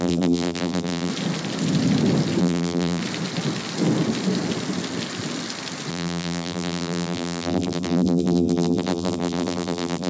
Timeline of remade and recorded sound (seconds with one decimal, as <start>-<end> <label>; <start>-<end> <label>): 0.0-1.1 remade; 1.1-2.4 recorded; 2.4-3.0 remade; 3.0-5.9 recorded; 5.9-10.1 remade